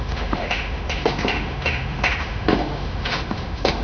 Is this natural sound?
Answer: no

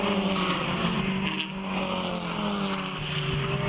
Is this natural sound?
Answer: yes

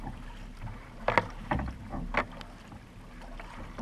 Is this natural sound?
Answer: yes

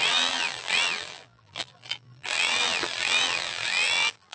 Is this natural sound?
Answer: no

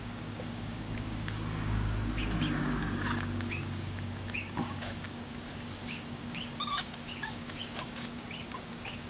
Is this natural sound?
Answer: no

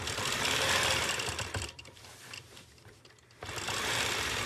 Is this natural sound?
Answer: no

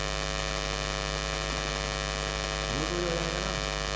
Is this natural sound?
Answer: yes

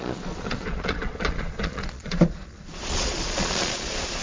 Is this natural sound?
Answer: no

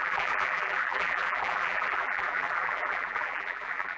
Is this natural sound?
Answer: no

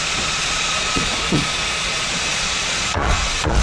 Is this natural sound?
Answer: no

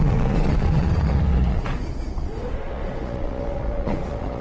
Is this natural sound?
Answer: no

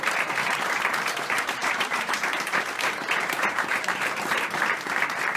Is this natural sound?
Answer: no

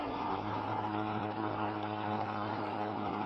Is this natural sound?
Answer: no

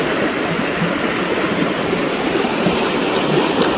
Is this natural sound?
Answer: no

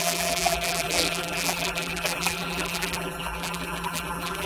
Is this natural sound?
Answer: no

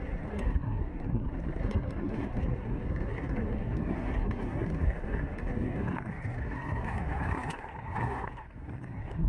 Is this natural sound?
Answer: no